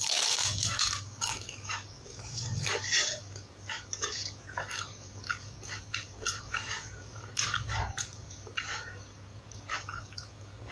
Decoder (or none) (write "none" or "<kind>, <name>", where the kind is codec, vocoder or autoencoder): codec, DAC